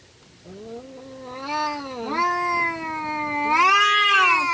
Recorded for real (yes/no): yes